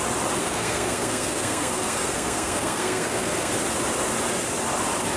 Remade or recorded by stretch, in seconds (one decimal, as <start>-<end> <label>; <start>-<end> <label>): 0.0-0.4 recorded; 0.4-3.5 remade; 3.5-5.2 recorded